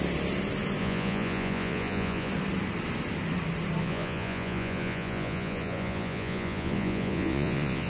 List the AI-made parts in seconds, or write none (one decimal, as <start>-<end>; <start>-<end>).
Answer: 0.8-2.3; 3.8-7.9